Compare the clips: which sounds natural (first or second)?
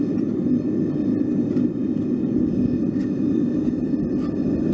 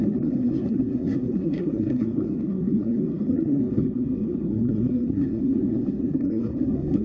first